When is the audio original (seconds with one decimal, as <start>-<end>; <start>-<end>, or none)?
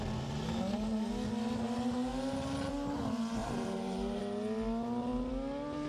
0.0-3.4; 4.2-5.9